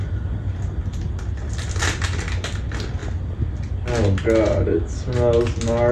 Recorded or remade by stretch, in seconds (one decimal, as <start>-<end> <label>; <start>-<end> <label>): 0.0-5.9 recorded